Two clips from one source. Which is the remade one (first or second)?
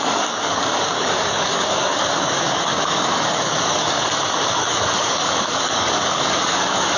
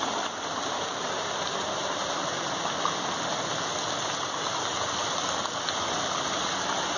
first